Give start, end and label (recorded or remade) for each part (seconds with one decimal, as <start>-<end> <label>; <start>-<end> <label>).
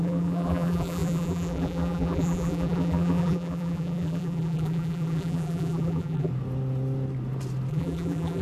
0.0-6.3 remade; 6.3-7.7 recorded; 7.7-8.4 remade